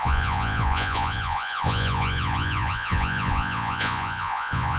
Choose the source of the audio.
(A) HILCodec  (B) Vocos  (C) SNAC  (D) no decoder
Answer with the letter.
B